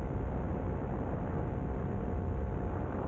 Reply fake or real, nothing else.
real